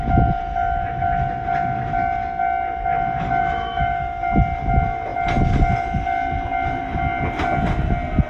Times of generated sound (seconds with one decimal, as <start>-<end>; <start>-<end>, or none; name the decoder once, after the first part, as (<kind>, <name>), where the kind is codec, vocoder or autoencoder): 3.4-4.2 (autoencoder, DAC-VAE)